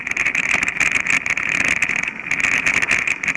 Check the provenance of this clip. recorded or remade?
recorded